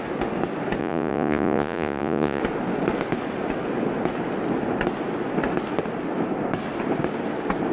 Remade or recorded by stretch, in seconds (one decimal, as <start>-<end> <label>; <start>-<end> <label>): 0.0-0.8 recorded; 0.8-2.4 remade; 2.4-7.7 recorded